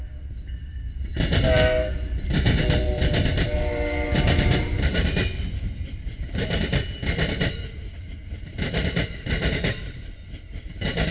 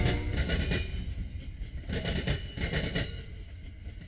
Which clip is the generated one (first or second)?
first